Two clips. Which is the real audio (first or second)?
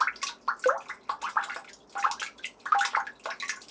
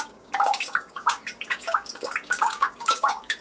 first